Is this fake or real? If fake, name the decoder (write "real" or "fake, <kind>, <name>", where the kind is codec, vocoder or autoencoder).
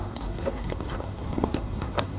fake, codec, SNAC